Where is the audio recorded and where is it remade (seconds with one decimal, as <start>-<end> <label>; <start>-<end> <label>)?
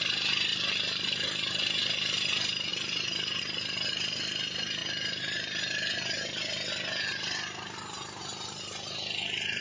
0.0-9.6 recorded